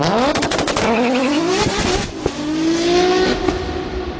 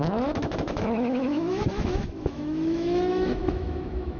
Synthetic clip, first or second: second